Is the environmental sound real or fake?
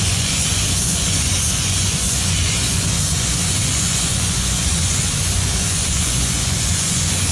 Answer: fake